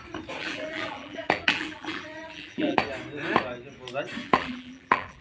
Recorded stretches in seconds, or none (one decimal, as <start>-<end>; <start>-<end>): 0.0-0.4; 2.8-4.2